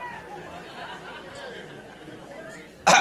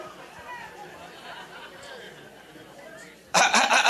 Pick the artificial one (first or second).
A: second